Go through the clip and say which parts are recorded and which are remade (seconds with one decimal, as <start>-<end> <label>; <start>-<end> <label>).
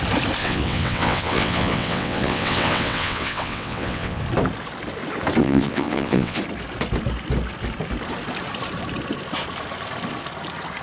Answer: 0.0-0.4 recorded; 0.4-4.2 remade; 4.2-5.4 recorded; 5.4-6.4 remade; 6.4-10.8 recorded